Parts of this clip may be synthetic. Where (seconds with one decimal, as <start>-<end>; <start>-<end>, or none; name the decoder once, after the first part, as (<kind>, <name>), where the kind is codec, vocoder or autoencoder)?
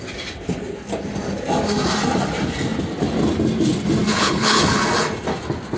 4.1-4.8 (codec, HILCodec)